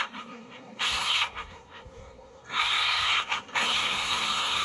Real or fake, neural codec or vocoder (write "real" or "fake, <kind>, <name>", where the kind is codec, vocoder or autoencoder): fake, codec, SNAC